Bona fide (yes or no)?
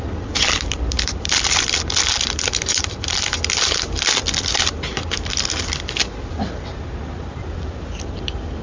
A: no